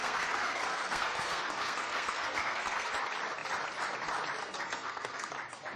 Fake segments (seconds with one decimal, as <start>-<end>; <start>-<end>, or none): 0.0-2.9; 4.4-5.3